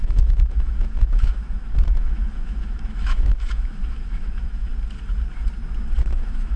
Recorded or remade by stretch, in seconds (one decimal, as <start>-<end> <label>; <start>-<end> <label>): 0.0-4.7 remade; 4.7-6.0 recorded; 6.0-6.6 remade